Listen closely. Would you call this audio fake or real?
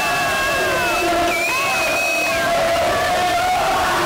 real